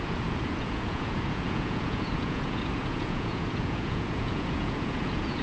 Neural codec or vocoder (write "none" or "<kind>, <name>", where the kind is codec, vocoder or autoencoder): vocoder, Vocos